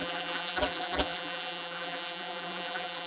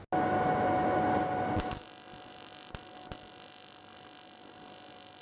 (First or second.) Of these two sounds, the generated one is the first